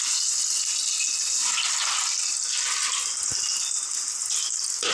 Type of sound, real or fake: real